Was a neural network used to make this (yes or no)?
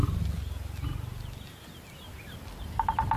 no